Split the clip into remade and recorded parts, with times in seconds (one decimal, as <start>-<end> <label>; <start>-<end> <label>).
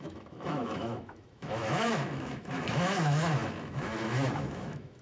0.0-5.0 remade